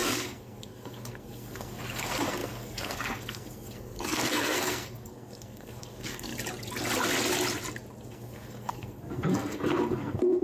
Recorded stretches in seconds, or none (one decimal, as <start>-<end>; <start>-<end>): 6.3-8.1